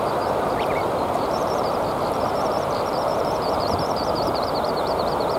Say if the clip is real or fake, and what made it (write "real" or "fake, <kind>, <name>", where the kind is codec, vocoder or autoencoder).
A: fake, vocoder, BigVGAN v2